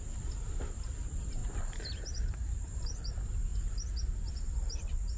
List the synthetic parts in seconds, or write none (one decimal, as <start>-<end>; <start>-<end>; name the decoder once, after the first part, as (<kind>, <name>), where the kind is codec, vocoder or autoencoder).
none